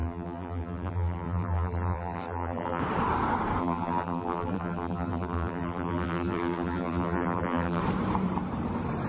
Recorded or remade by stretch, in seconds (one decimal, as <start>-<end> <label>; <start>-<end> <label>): 0.0-2.8 remade; 2.8-3.6 recorded; 3.6-7.8 remade; 7.8-9.1 recorded